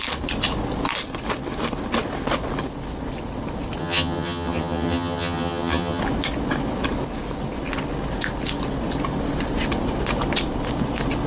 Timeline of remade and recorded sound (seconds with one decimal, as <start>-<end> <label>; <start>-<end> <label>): 0.0-3.8 recorded; 3.8-6.0 remade; 6.0-11.3 recorded